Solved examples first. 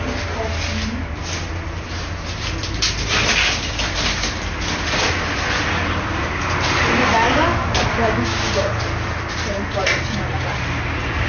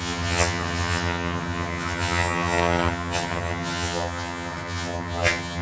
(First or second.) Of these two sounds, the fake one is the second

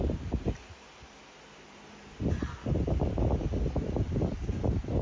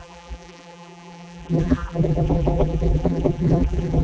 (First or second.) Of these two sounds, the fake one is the second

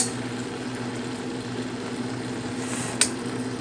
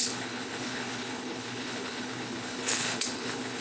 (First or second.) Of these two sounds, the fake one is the second